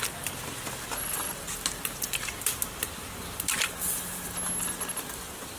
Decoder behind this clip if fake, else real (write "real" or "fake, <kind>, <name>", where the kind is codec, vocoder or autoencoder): real